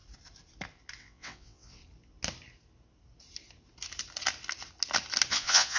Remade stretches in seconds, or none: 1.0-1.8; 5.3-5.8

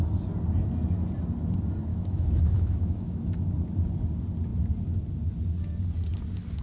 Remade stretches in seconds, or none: 1.9-3.4